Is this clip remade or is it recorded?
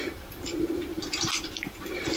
remade